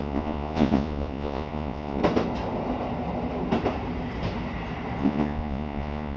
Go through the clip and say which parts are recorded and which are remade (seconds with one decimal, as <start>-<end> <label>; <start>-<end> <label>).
0.0-2.0 remade; 2.0-5.0 recorded; 5.0-6.2 remade

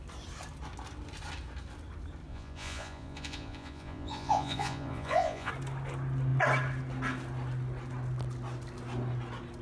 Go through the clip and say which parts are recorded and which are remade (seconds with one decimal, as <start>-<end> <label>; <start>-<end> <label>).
0.0-2.3 recorded; 2.3-5.5 remade; 5.5-9.6 recorded

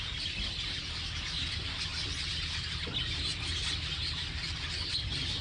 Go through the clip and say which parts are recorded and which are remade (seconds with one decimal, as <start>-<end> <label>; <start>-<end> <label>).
0.0-5.4 recorded

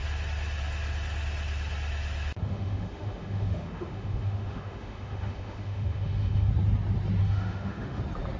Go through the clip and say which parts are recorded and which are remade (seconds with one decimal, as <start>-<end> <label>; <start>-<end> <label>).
0.0-2.4 recorded; 2.4-6.5 remade; 6.5-7.2 recorded; 7.2-8.0 remade; 8.0-8.4 recorded

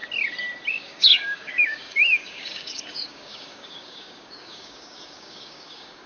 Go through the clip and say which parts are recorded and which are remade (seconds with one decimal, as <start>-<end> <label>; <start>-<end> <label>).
0.0-0.7 recorded; 0.7-6.1 remade

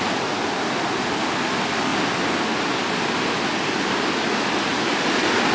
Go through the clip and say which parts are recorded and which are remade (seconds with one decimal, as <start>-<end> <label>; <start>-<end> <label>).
0.0-5.5 recorded

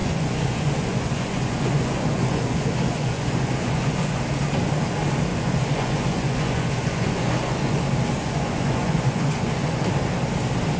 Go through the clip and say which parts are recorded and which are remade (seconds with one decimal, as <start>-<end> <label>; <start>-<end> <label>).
0.0-4.2 remade; 4.2-5.3 recorded; 5.3-7.8 remade; 7.8-8.2 recorded; 8.2-9.8 remade; 9.8-10.8 recorded

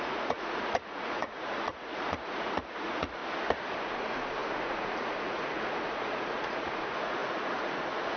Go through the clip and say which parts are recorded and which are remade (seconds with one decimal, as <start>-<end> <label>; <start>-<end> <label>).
0.0-3.2 remade; 3.2-3.8 recorded; 3.8-8.2 remade